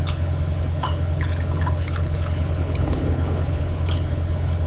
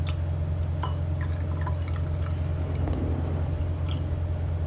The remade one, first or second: first